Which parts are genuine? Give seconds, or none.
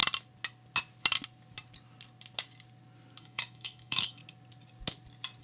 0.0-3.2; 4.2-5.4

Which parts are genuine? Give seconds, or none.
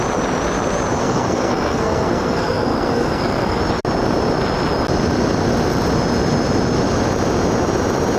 0.0-1.0; 3.6-8.2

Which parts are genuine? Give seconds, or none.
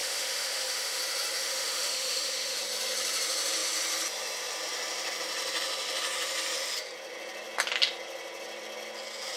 1.0-1.4; 2.6-9.4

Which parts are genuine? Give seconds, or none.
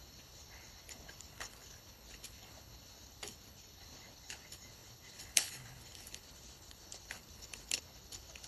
none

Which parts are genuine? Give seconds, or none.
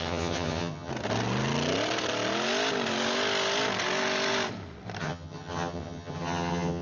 0.9-5.0